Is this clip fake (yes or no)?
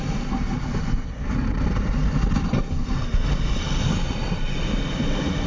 no